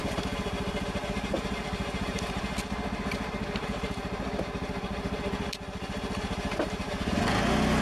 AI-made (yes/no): no